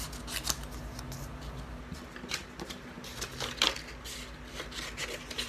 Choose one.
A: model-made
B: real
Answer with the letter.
B